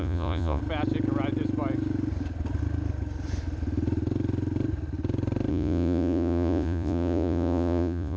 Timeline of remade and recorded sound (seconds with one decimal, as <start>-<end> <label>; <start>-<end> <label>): 0.0-0.6 remade; 0.6-5.5 recorded; 5.5-8.2 remade